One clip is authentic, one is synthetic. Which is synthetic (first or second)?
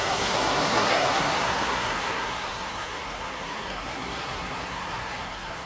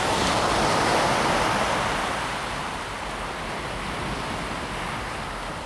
first